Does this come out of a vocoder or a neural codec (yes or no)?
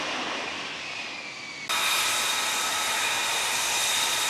no